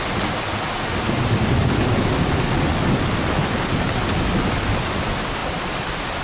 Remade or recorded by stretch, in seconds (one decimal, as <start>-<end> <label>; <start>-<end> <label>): 0.0-6.2 recorded